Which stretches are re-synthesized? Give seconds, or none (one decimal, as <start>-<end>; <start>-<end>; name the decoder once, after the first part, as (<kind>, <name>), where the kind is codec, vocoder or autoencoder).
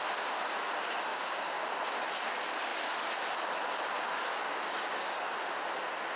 1.1-1.7 (codec, DAC); 4.3-5.3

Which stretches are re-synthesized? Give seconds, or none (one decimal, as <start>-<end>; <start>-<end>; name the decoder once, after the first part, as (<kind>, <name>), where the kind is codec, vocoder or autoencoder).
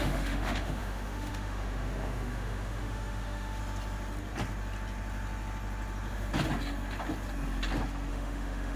0.0-3.6 (autoencoder, DAC-VAE); 8.1-8.8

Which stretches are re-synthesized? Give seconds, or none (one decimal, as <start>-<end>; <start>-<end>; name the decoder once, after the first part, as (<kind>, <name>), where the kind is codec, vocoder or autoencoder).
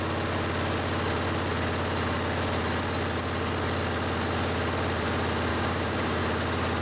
5.5-6.2 (codec, DAC)